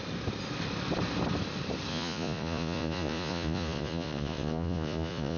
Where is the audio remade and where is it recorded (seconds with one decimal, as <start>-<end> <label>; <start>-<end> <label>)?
0.0-1.9 recorded; 1.9-5.4 remade